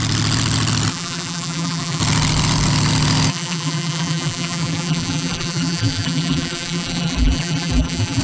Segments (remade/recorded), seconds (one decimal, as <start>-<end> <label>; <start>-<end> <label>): 0.0-0.9 recorded; 0.9-2.0 remade; 2.0-3.3 recorded; 3.3-8.2 remade